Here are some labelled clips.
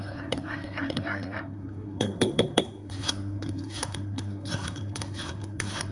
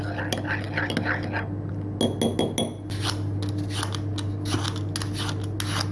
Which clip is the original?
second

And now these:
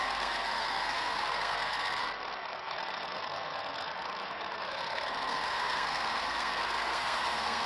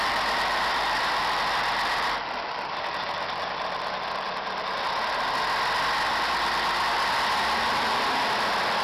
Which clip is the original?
second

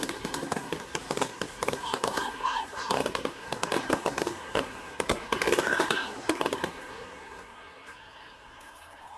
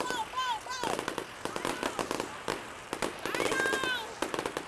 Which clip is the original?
second